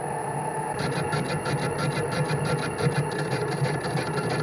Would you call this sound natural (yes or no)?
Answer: yes